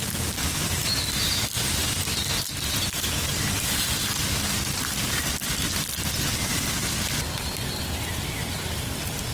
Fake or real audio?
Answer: real